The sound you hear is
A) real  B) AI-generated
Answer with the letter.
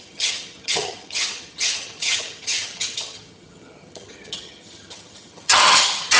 B